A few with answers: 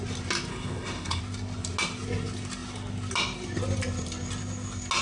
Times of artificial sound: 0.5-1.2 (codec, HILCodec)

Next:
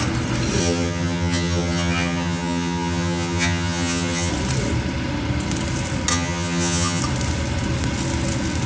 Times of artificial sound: 0.6-4.3 (vocoder, HiFi-GAN); 6.1-7.0

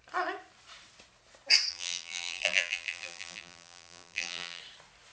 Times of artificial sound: 1.7-4.6 (vocoder, BigVGAN v2)

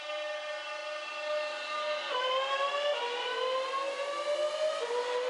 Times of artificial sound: none

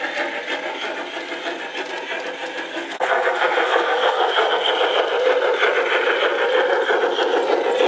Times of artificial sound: 2.7-4.7 (codec, SNAC)

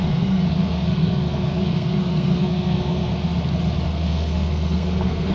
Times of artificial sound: 0.0-3.1 (codec, SNAC); 3.9-5.3

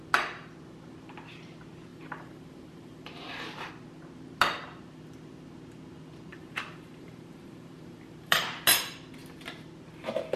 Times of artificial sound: 1.9-3.7 (vocoder, BigVGAN v2); 6.3-8.4